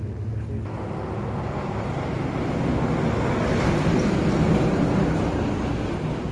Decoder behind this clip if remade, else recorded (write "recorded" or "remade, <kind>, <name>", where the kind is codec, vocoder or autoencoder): recorded